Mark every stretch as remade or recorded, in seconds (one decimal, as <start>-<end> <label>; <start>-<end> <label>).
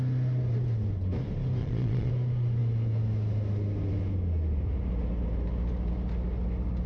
0.0-1.6 recorded; 1.6-2.1 remade; 2.1-6.9 recorded